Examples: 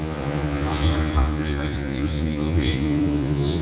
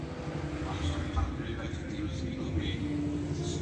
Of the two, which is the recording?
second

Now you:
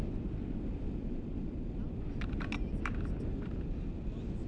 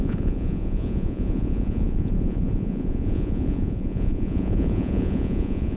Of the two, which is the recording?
first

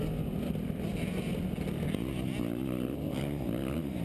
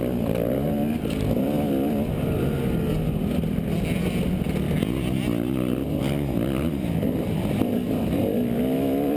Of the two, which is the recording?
second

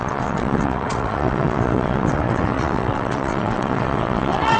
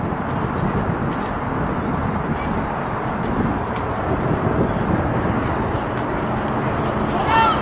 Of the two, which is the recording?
second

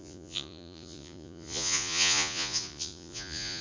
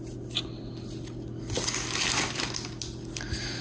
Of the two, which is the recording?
second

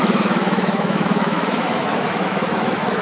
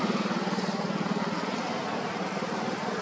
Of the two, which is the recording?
second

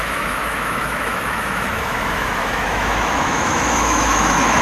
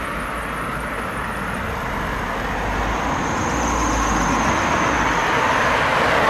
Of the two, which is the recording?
second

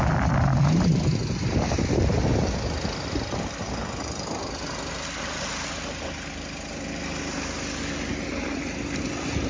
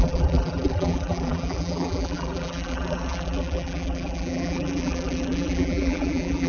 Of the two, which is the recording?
first